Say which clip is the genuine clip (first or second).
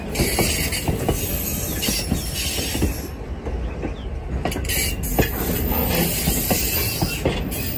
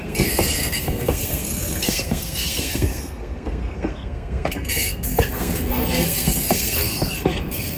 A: first